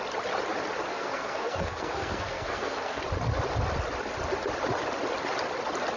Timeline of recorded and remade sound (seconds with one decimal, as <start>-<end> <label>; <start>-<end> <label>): 0.0-0.9 recorded; 0.9-3.0 remade; 3.0-6.0 recorded